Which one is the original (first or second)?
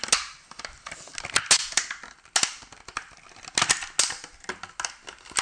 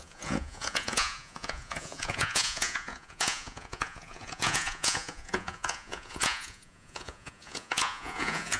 first